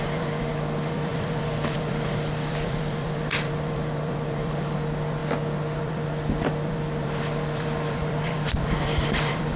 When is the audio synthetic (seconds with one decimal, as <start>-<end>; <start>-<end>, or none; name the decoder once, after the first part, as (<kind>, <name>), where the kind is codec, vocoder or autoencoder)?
0.0-5.2 (vocoder, BigVGAN v2); 5.8-9.6